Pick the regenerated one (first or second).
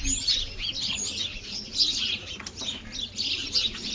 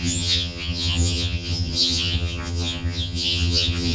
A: second